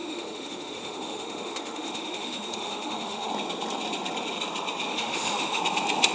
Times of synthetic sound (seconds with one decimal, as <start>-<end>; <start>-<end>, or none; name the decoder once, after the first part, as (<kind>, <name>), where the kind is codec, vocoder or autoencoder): 0.0-3.3 (autoencoder, DAC-VAE); 4.9-5.6